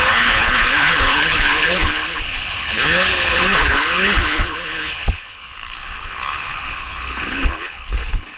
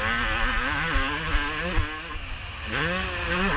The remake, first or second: first